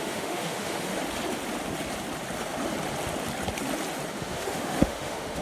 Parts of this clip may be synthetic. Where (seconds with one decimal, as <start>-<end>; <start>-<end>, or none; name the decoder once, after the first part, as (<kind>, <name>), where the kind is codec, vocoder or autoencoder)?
0.0-0.9 (autoencoder, DAC-VAE); 4.1-5.4